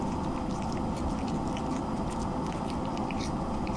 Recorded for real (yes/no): yes